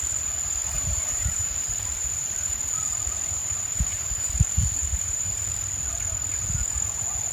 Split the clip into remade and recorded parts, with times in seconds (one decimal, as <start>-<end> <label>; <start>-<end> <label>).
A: 0.0-0.6 recorded; 0.6-2.6 remade; 2.6-3.4 recorded; 3.4-4.3 remade; 4.3-4.8 recorded; 4.8-5.3 remade; 5.3-7.3 recorded